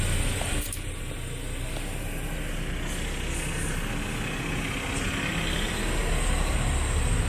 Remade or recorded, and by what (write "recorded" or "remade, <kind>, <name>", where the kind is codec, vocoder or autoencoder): recorded